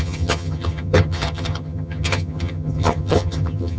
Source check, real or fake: fake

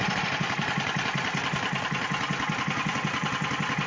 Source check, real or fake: real